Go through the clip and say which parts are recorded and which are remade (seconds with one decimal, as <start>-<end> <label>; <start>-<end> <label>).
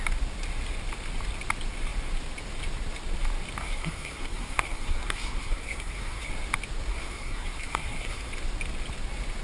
0.0-3.6 recorded; 3.6-6.3 remade; 6.3-6.9 recorded; 6.9-8.3 remade; 8.3-9.4 recorded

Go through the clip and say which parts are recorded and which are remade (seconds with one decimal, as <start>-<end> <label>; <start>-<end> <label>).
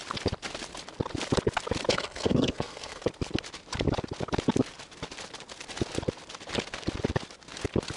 0.0-1.9 recorded; 1.9-3.0 remade; 3.0-8.0 recorded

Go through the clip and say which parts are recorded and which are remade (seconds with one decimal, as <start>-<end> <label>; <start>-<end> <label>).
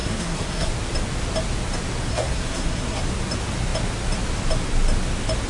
0.0-0.7 remade; 0.7-2.1 recorded; 2.1-3.0 remade; 3.0-5.5 recorded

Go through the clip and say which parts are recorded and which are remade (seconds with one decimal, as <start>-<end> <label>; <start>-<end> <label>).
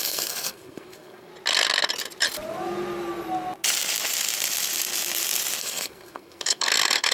0.0-1.3 remade; 1.3-5.6 recorded; 5.6-7.1 remade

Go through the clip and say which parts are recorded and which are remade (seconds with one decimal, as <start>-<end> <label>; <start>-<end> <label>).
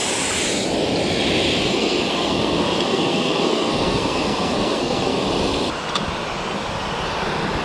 0.0-1.7 recorded; 1.7-5.2 remade; 5.2-7.6 recorded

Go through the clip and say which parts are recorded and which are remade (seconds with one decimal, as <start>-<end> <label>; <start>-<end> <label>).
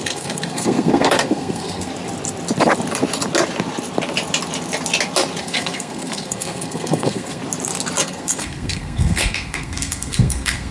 0.0-1.9 remade; 1.9-5.4 recorded; 5.4-7.4 remade; 7.4-8.0 recorded; 8.0-10.7 remade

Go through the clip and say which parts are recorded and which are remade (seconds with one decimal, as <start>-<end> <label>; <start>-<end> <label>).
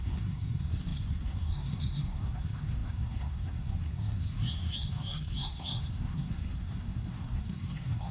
0.0-8.1 remade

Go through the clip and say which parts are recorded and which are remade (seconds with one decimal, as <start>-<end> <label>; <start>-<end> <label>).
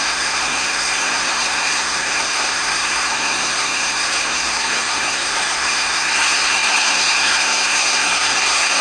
0.0-8.8 remade